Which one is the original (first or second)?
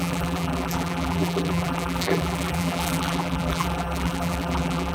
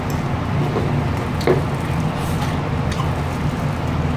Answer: second